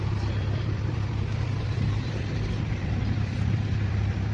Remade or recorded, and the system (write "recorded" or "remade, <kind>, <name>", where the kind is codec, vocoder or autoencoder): remade, vocoder, BigVGAN v2